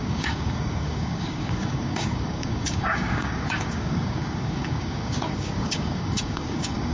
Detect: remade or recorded remade